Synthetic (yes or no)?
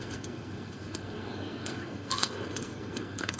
yes